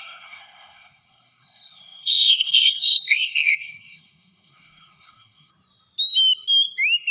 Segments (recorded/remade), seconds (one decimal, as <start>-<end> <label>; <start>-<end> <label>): 0.0-5.5 remade; 5.5-7.1 recorded